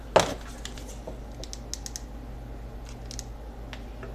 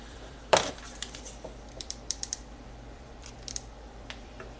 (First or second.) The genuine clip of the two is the first